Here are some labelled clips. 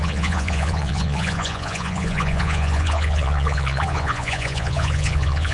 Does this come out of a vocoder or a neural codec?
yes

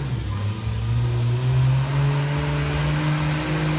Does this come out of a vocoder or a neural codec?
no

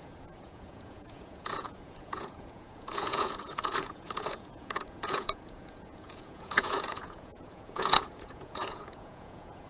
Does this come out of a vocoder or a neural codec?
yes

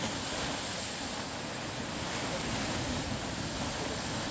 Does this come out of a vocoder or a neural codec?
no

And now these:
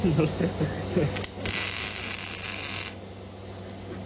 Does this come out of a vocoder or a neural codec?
no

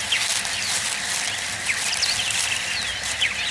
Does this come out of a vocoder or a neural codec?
no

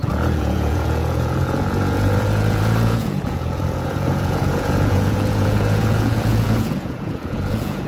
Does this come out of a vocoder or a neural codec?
yes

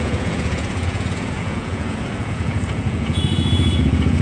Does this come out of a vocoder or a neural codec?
yes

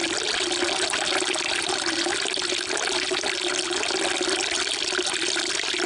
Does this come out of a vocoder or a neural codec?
no